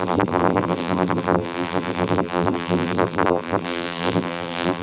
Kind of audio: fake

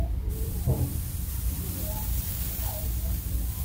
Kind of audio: fake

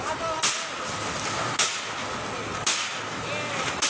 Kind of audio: real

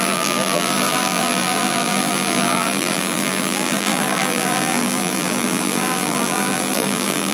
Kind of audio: fake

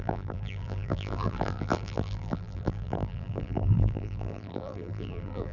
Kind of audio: fake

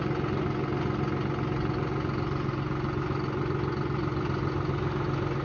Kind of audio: real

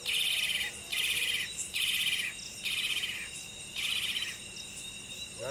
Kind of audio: real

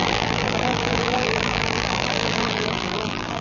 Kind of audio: fake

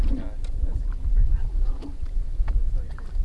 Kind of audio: fake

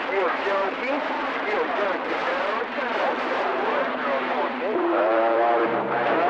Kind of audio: fake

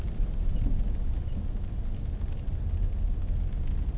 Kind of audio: real